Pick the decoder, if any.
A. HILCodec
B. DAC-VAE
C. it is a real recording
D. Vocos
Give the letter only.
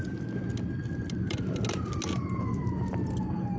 C